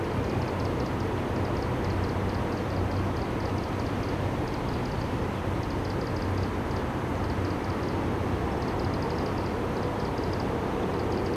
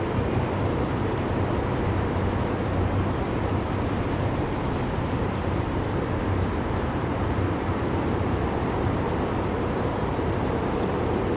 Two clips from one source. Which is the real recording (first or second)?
first